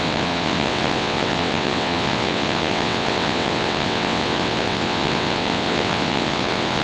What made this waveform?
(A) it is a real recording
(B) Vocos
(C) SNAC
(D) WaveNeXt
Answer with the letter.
D